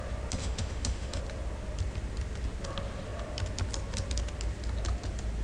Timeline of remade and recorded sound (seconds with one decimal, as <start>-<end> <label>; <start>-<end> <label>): 0.0-0.4 recorded; 0.4-1.2 remade; 1.2-5.4 recorded